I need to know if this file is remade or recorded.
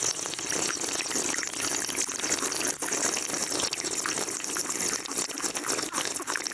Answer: recorded